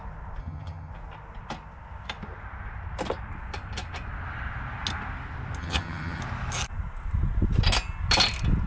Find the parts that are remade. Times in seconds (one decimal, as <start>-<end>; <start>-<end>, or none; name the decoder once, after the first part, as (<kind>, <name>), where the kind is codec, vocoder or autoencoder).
0.4-0.9 (vocoder, HiFi-GAN); 5.6-6.2